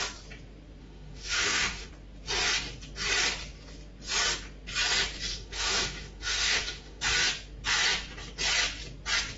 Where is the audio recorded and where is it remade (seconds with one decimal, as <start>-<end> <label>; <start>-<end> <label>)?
0.0-0.8 recorded; 0.8-1.9 remade; 1.9-5.3 recorded; 5.3-7.0 remade; 7.0-9.4 recorded